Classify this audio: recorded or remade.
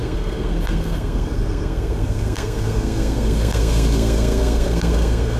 remade